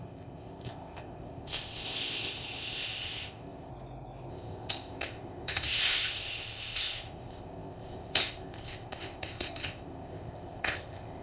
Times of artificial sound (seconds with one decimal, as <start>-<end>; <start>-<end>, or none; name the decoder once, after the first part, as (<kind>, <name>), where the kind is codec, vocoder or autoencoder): 0.0-3.7 (codec, ZipCodec); 4.3-11.2